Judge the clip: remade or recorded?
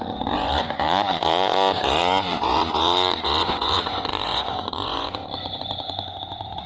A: remade